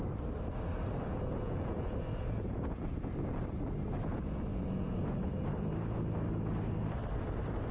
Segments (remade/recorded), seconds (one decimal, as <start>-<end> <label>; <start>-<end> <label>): 0.0-1.1 recorded; 1.1-3.4 remade; 3.4-4.5 recorded; 4.5-5.2 remade; 5.2-7.7 recorded